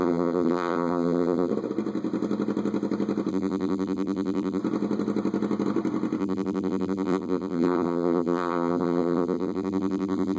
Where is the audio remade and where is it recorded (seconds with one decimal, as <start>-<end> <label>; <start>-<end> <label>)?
0.0-1.5 remade; 1.5-3.3 recorded; 3.3-4.6 remade; 4.6-6.2 recorded; 6.2-10.4 remade